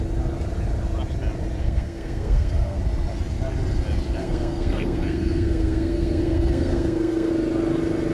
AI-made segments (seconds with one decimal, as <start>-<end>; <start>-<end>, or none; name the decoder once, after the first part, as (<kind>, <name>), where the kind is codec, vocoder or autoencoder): 1.6-2.8 (codec, SNAC); 4.2-7.3